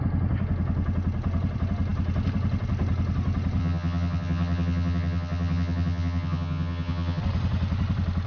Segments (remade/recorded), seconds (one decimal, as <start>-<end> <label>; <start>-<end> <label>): 0.0-3.6 recorded; 3.6-7.2 remade; 7.2-8.3 recorded

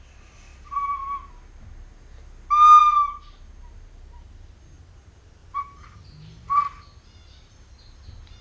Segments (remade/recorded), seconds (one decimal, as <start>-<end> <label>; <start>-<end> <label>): 0.0-0.5 recorded; 0.5-1.3 remade; 1.3-5.4 recorded; 5.4-6.6 remade; 6.6-8.4 recorded

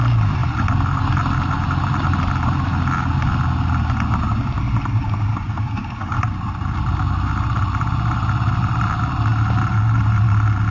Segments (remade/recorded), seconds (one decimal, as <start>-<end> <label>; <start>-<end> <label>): 0.0-5.3 recorded; 5.3-6.2 remade; 6.2-10.7 recorded

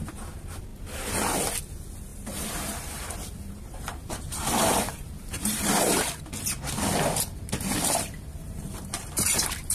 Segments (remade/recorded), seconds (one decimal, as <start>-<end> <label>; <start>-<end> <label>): 0.0-2.1 recorded; 2.1-6.2 remade; 6.2-8.4 recorded; 8.4-9.7 remade

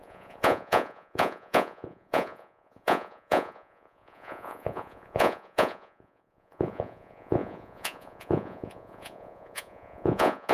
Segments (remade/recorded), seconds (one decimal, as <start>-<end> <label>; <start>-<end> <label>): 0.0-10.5 remade

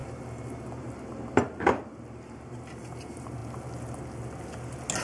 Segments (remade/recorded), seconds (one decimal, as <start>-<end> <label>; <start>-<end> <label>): 0.0-3.0 remade; 3.0-5.0 recorded

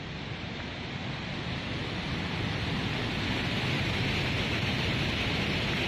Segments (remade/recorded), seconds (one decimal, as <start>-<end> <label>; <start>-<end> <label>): 0.0-5.9 recorded